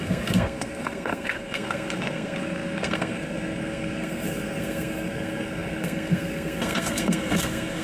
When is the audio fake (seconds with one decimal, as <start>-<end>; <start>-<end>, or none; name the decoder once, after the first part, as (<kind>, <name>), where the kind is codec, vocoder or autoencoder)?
0.0-7.8 (codec, SNAC)